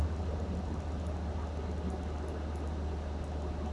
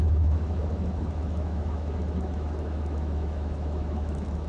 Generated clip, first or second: second